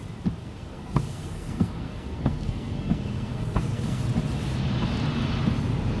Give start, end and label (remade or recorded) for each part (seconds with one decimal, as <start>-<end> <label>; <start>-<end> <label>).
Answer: 0.0-0.4 recorded; 0.4-4.0 remade; 4.0-6.0 recorded